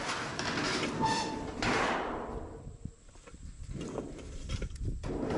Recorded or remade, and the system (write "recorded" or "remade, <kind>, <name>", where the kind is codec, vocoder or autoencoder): remade, vocoder, BigVGAN v2